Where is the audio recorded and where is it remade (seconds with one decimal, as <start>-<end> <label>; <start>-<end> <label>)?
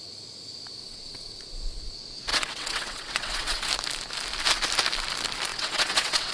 0.0-0.8 recorded; 0.8-1.4 remade; 1.4-2.3 recorded; 2.3-3.7 remade; 3.7-5.5 recorded; 5.5-6.3 remade